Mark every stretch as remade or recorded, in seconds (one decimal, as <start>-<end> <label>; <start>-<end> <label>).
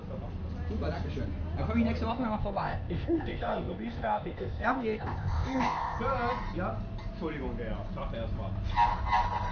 0.0-2.1 recorded; 2.1-6.0 remade; 6.0-9.5 recorded